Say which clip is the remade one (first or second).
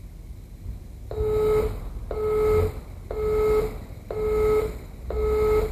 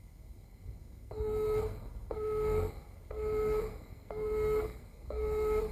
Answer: second